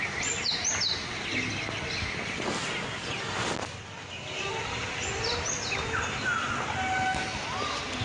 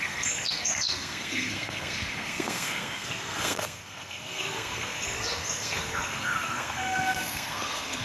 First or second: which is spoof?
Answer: second